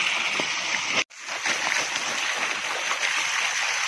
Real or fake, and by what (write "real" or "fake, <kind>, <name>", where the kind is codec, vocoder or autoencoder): real